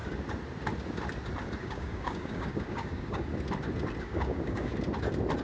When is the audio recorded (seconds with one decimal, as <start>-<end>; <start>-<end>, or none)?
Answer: 0.0-1.6; 3.3-4.0; 4.7-5.4